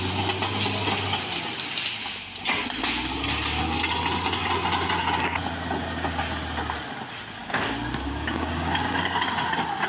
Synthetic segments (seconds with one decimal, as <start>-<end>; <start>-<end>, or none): 7.4-9.4

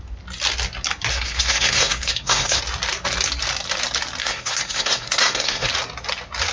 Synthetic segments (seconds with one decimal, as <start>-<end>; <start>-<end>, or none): 1.1-2.6; 4.2-5.7

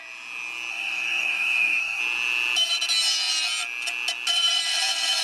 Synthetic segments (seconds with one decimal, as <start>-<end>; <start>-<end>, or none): 0.7-2.0

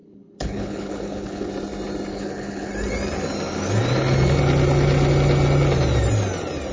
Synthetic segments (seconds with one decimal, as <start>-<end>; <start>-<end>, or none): 0.0-1.5; 2.1-2.7

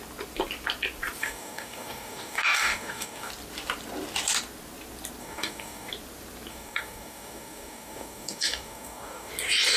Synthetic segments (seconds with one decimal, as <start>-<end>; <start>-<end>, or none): 1.2-3.3; 5.2-5.9; 6.5-9.3

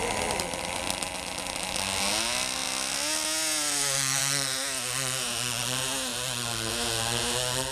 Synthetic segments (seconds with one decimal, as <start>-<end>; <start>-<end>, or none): none